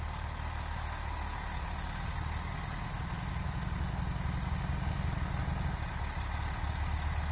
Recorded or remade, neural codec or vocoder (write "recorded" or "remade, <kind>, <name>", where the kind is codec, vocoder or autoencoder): recorded